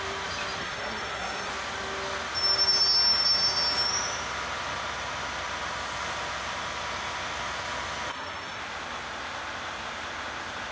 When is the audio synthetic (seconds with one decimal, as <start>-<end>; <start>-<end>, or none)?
0.6-1.5; 8.1-8.6